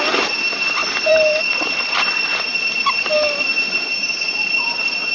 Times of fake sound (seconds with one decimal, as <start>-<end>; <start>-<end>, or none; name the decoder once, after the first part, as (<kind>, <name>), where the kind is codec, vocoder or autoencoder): 0.0-5.1 (vocoder, BigVGAN v2)

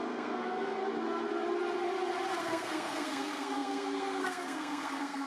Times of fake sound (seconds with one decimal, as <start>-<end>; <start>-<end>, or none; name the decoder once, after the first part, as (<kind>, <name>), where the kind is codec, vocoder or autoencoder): 0.0-0.8 (codec, SNAC); 2.4-5.3

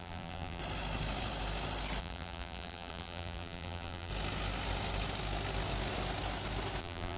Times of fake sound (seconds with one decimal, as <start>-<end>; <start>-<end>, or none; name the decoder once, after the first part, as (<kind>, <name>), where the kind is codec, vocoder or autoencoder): 0.0-0.6 (vocoder, BigVGAN v2); 2.0-4.1; 6.8-7.2

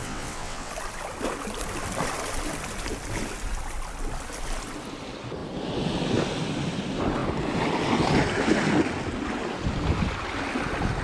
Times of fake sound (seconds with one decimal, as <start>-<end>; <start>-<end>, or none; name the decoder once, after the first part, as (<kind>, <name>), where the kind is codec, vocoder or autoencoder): 0.0-0.7 (vocoder, WaveNeXt)

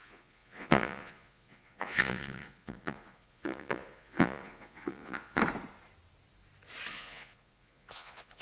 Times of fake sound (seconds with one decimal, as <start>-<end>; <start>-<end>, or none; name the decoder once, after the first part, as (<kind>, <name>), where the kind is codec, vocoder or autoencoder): 0.0-5.4 (vocoder, Vocos); 6.9-8.4

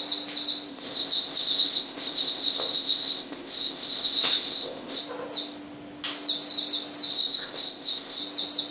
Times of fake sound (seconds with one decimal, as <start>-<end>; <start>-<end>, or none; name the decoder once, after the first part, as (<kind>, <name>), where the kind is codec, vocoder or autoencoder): 0.7-5.0 (codec, ZipCodec); 7.1-8.2

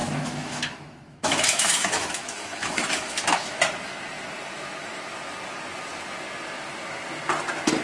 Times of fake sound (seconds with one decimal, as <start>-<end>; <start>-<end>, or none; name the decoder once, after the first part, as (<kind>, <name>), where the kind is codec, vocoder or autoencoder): 0.0-3.6 (autoencoder, DAC-VAE)

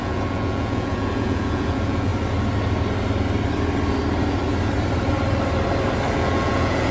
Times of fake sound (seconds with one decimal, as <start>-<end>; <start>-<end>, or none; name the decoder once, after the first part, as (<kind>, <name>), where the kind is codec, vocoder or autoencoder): 0.0-2.1 (vocoder, Vocos); 6.1-6.9